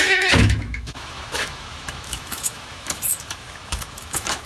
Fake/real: fake